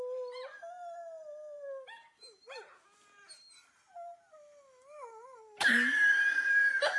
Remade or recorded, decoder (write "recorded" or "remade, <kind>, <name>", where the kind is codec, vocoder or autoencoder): recorded